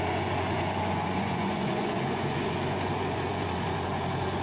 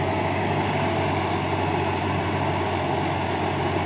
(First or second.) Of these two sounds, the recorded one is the second